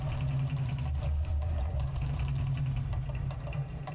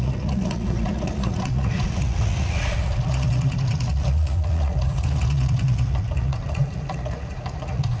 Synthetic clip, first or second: second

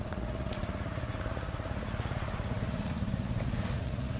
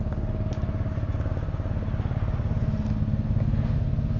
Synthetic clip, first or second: first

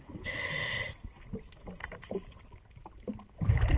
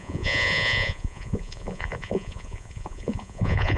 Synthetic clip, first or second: second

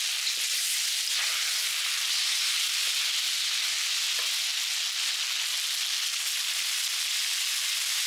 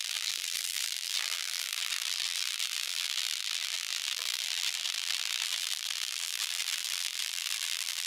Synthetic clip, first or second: second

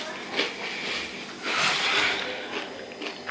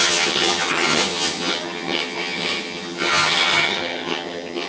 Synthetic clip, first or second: second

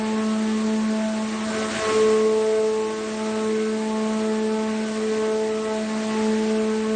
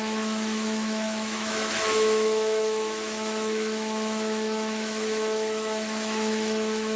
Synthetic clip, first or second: second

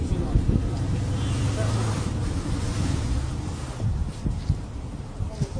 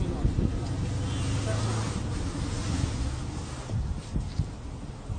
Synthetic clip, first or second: first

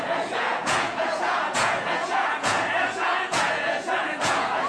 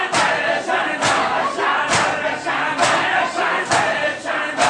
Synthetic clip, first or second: first